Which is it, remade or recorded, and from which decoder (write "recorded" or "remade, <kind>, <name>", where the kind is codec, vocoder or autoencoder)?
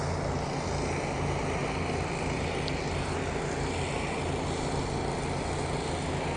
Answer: recorded